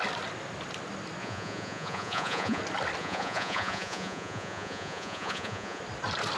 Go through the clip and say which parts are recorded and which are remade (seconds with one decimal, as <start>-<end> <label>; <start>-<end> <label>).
0.0-1.2 recorded; 1.2-2.6 remade; 2.6-3.0 recorded; 3.0-5.8 remade; 5.8-6.4 recorded